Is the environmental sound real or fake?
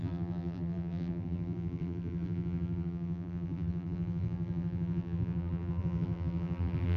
fake